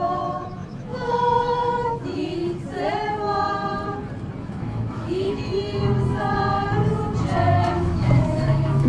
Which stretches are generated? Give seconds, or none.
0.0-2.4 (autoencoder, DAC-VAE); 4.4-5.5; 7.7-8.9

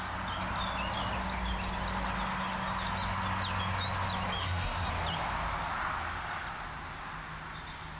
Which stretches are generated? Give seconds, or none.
4.4-4.9 (codec, SNAC)

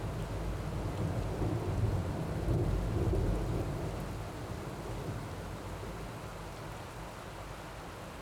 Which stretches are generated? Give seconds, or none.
2.0-3.3 (vocoder, BigVGAN v2)

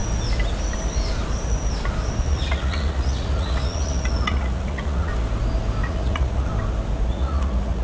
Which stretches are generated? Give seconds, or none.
2.2-5.1 (vocoder, Vocos); 5.8-6.5; 7.1-7.8

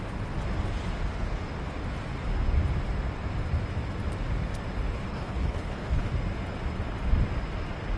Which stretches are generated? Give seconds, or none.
5.1-6.1 (codec, HILCodec)

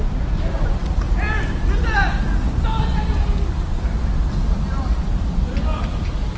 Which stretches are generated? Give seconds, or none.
none

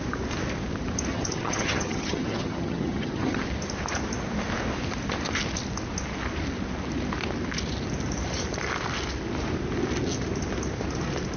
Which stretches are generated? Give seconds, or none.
1.1-3.4 (vocoder, HiFi-GAN)